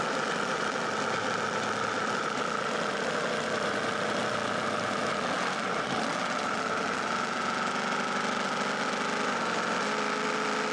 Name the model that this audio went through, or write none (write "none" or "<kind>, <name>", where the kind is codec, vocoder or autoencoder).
none